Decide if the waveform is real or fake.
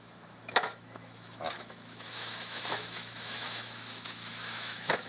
fake